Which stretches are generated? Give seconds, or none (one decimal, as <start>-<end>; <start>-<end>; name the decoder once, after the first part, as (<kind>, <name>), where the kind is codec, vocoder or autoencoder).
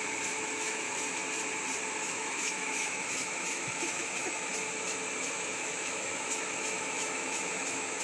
0.0-1.2 (autoencoder, DAC-VAE); 2.0-4.5; 5.2-8.0